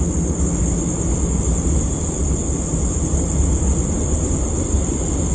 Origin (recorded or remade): recorded